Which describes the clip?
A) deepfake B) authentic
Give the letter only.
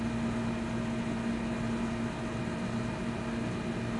B